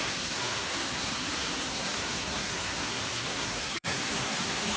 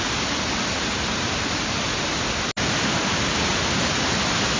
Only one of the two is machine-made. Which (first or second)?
first